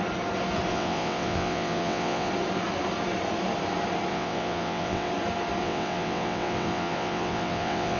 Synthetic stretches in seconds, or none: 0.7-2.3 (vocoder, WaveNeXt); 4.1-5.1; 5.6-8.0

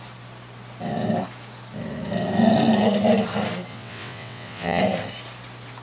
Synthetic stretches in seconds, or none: 3.7-4.8 (vocoder, WaveNeXt)

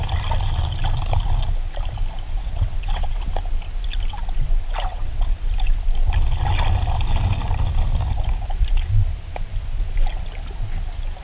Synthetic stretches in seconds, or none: 2.4-3.3 (vocoder, WaveNeXt); 4.9-5.5